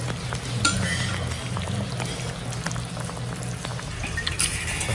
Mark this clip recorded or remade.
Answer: recorded